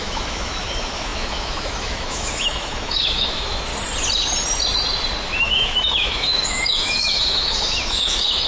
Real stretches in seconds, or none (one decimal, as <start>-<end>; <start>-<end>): 3.7-5.4